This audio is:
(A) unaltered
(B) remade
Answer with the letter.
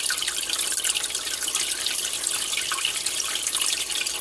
B